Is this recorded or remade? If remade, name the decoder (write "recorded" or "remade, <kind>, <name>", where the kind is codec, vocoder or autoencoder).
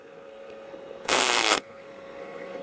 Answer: remade, codec, SNAC